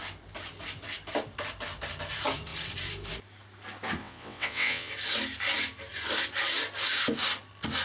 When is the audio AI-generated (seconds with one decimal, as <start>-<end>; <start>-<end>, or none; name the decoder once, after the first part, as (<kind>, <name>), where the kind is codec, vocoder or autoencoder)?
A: 4.0-4.9 (vocoder, WaveNeXt)